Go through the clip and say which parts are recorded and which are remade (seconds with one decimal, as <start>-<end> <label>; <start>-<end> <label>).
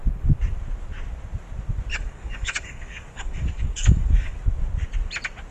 0.0-1.9 recorded; 1.9-4.4 remade; 4.4-5.5 recorded